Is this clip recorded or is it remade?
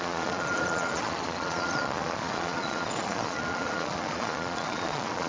remade